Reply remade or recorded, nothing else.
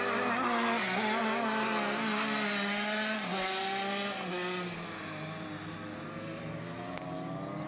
recorded